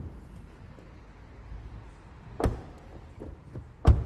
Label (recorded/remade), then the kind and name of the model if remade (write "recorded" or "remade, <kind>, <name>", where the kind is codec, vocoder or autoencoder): recorded